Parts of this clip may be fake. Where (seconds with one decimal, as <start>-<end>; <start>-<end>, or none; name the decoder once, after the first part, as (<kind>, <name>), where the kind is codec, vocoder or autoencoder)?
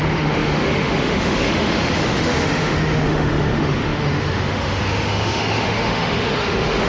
0.0-6.9 (autoencoder, DAC-VAE)